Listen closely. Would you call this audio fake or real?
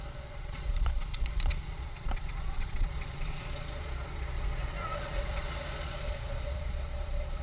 fake